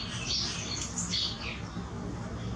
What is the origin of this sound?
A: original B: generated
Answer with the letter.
A